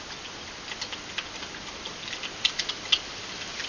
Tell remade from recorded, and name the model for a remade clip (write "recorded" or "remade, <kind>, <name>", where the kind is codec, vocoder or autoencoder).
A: recorded